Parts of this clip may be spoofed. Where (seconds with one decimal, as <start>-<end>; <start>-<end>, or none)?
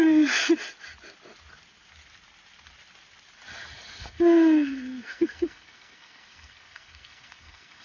0.0-0.4; 4.0-7.8